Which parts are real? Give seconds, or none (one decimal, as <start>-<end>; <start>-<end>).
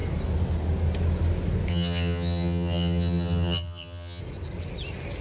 0.0-1.7; 4.2-5.2